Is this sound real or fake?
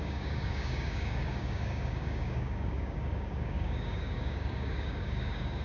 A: fake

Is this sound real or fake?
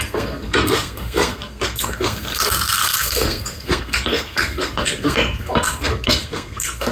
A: fake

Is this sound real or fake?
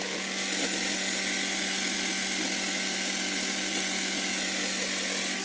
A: real